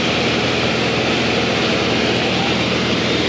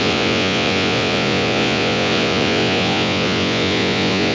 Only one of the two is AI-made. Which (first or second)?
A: second